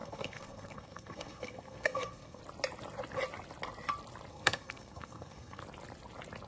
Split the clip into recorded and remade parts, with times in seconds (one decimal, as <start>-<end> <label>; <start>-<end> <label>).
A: 0.0-2.4 remade; 2.4-4.3 recorded; 4.3-5.6 remade; 5.6-6.5 recorded